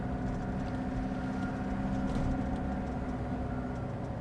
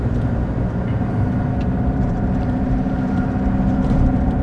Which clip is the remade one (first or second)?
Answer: second